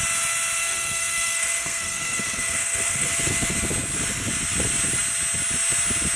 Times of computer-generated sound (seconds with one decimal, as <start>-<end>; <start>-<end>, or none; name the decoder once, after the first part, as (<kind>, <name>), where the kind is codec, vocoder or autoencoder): 0.6-3.1 (codec, SNAC)